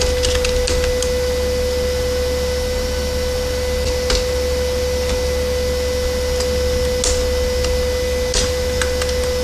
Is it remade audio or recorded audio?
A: recorded